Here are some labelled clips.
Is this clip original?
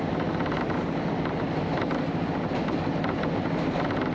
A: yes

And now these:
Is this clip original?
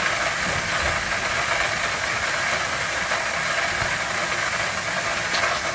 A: yes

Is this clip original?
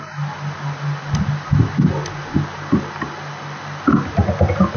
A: yes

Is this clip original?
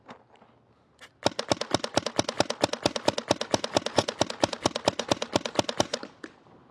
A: yes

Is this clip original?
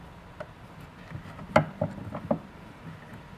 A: yes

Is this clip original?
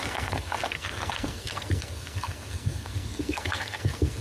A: no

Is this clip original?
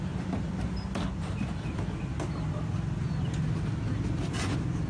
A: yes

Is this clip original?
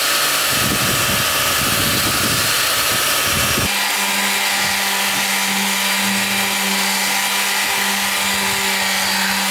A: yes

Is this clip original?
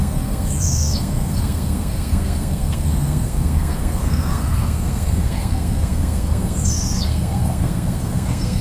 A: no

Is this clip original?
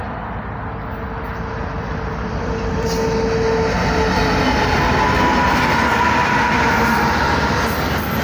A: yes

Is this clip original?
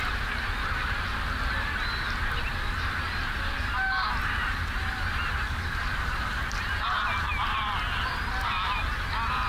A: yes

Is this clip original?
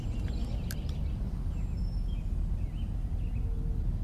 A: yes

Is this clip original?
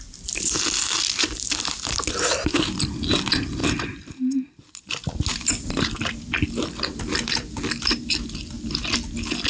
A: yes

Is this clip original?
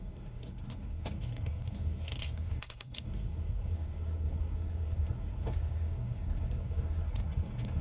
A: no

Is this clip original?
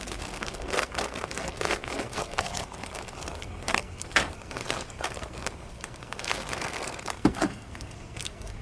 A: no